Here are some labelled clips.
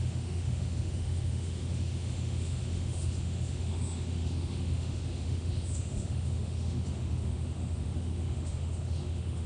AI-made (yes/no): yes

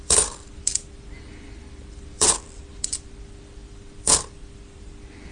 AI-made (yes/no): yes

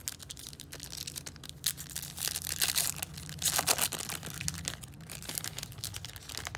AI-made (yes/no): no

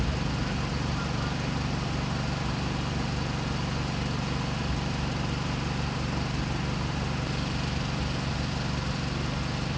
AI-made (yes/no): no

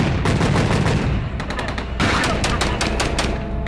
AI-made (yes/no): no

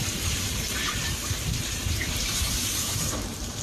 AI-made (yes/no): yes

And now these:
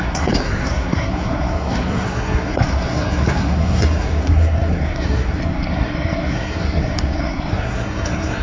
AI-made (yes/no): yes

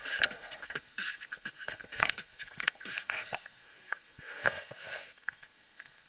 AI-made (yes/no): yes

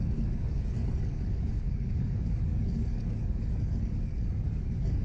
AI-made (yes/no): yes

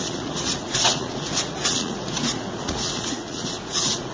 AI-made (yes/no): yes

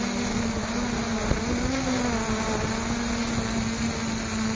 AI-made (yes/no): no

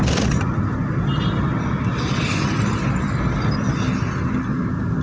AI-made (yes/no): no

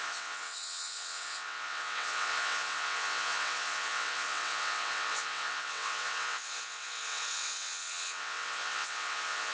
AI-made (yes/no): yes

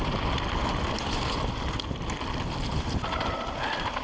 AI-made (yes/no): yes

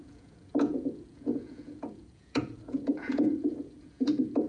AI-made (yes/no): yes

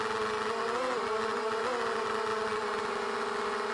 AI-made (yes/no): no